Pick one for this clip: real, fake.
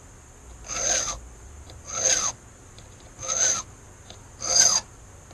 real